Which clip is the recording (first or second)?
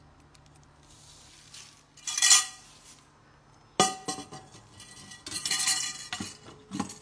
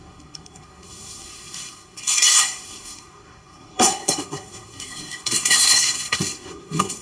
first